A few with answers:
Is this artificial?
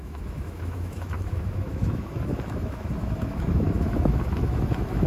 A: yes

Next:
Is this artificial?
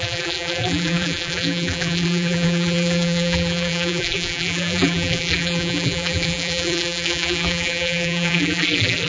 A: yes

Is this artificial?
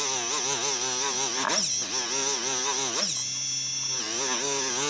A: no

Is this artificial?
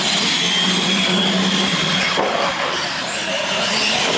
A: no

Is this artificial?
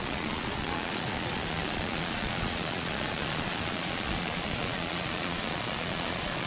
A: yes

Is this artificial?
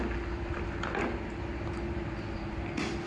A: no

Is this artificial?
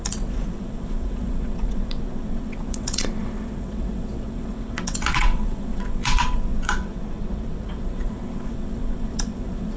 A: yes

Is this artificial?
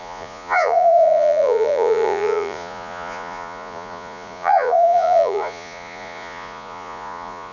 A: yes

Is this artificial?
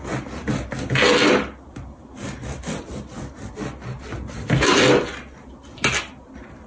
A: no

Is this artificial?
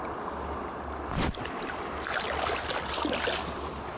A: no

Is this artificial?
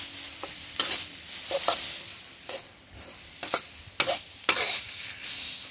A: no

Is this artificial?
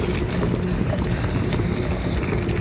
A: no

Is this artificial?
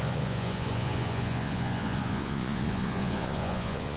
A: yes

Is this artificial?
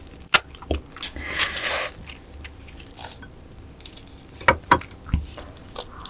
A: no